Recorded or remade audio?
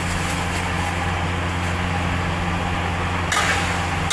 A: recorded